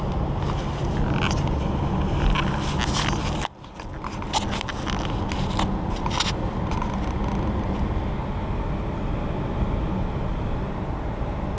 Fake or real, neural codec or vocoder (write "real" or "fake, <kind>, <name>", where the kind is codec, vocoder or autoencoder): real